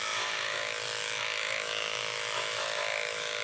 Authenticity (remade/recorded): remade